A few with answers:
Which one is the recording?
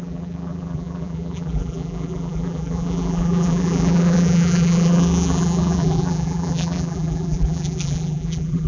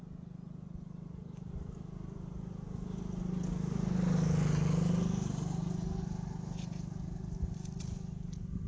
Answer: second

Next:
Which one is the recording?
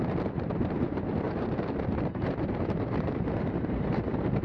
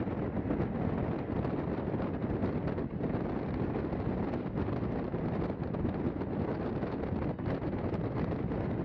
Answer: second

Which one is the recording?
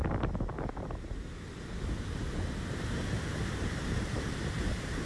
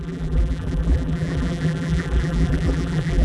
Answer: first